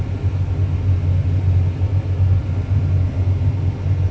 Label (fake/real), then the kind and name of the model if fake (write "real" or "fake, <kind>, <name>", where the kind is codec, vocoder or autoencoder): real